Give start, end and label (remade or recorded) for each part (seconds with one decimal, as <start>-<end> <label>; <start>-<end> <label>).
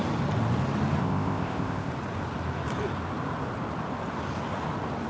0.0-1.0 recorded; 1.0-1.9 remade; 1.9-5.1 recorded